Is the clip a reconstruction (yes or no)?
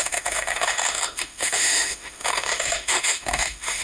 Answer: yes